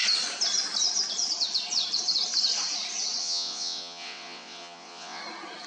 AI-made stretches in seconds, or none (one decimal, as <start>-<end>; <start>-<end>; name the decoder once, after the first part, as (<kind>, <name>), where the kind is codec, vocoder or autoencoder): 3.2-5.2 (vocoder, WaveNeXt)